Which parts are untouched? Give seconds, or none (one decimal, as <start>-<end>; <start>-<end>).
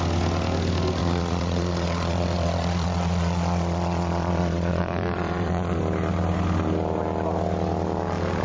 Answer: 0.0-1.0; 5.8-8.4